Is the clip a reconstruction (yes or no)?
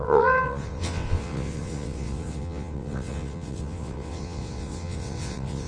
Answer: yes